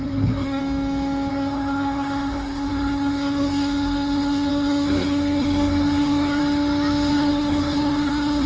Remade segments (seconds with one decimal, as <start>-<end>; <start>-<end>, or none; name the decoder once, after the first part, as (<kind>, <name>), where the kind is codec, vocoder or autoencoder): 0.0-0.6 (codec, SNAC); 1.3-6.4; 7.1-8.5